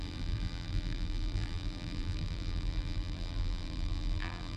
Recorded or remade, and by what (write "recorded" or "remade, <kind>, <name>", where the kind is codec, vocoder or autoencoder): remade, vocoder, BigVGAN v2